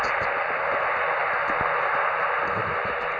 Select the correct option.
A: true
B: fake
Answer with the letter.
A